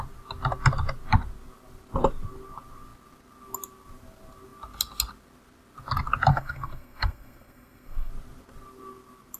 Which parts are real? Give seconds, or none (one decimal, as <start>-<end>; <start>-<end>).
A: 0.0-6.3; 8.1-9.4